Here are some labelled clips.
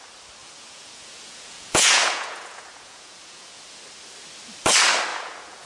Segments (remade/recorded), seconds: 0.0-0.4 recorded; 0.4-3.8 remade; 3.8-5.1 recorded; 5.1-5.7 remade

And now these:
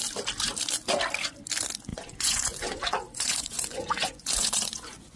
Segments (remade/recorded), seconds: 0.0-1.9 recorded; 1.9-5.2 remade